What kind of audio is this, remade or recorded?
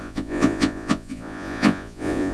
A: remade